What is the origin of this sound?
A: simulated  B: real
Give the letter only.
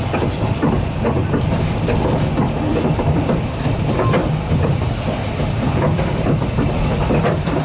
A